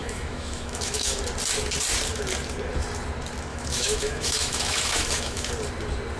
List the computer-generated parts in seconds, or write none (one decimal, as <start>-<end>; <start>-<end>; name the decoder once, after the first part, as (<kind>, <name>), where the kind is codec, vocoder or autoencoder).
0.0-1.2 (autoencoder, DAC-VAE); 3.5-5.5